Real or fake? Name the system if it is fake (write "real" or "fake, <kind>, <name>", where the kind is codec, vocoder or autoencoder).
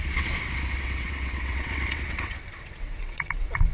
fake, vocoder, WaveNeXt